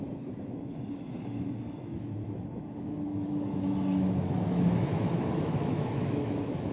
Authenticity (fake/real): fake